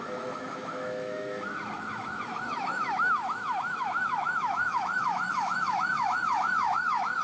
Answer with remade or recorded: remade